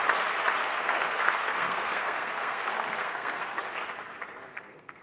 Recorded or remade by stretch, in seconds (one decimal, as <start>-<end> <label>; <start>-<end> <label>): 0.0-0.6 recorded; 0.6-3.6 remade; 3.6-4.5 recorded; 4.5-5.0 remade